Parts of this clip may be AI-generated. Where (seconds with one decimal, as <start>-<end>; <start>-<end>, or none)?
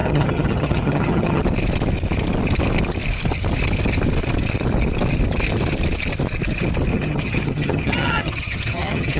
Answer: 0.0-1.4; 6.9-9.2